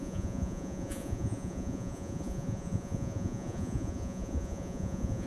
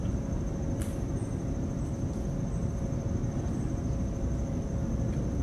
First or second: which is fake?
first